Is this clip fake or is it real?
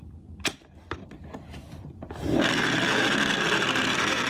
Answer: fake